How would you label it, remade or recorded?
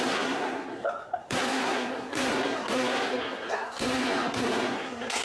remade